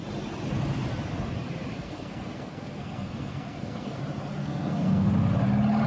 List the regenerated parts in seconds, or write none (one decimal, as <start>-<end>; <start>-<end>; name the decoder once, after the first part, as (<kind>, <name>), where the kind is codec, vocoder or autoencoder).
1.8-4.0 (codec, SNAC); 4.4-5.1